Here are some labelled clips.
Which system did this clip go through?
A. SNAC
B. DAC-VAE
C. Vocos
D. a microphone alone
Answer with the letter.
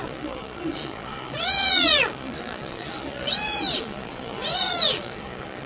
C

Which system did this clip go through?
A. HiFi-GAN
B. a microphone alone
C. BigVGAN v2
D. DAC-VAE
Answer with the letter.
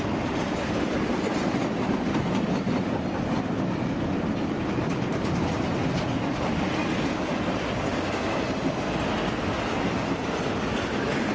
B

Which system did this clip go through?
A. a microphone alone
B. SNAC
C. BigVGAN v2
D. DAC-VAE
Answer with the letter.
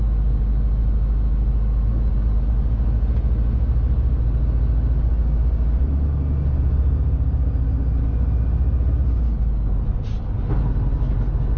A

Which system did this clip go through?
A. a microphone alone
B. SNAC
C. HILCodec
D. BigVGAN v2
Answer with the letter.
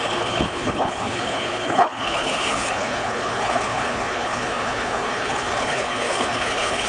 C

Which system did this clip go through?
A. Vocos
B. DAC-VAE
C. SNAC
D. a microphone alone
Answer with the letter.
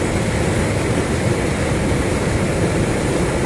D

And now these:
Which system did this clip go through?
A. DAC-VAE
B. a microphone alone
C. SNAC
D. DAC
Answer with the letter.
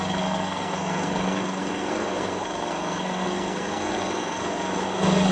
C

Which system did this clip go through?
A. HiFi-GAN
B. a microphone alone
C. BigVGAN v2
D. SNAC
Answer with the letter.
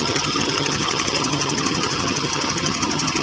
A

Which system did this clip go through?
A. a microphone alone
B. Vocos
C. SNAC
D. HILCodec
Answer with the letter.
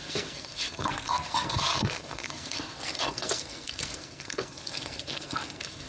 C